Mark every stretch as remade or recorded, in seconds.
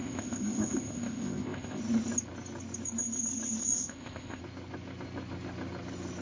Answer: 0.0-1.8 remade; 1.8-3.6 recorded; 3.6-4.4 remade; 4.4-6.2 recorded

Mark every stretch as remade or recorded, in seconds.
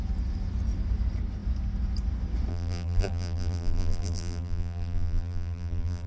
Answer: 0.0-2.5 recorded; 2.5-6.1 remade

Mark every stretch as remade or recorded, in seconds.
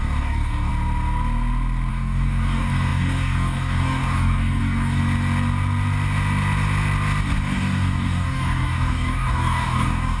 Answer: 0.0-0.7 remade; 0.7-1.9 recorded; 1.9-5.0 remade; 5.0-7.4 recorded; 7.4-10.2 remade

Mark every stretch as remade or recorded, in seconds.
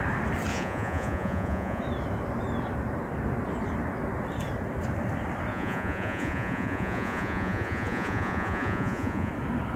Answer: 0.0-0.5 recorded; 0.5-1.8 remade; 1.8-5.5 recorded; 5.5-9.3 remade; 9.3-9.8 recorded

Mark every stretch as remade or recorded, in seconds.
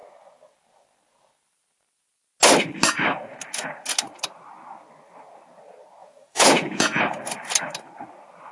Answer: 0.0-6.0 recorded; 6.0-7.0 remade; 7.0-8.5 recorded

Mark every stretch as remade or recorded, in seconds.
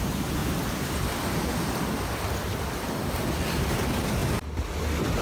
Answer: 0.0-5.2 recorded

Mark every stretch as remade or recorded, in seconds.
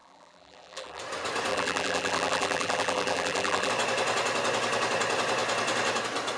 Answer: 0.0-1.0 remade; 1.0-1.5 recorded; 1.5-3.7 remade; 3.7-6.4 recorded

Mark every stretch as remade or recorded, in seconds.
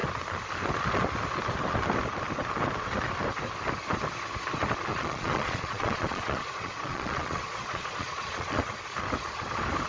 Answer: 0.0-4.9 recorded; 4.9-8.6 remade; 8.6-9.9 recorded